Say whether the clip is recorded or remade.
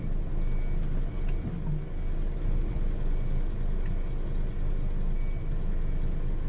recorded